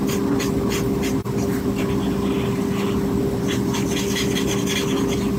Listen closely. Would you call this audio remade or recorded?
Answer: recorded